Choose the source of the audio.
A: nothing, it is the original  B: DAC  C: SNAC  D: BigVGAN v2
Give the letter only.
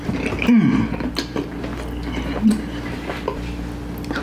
A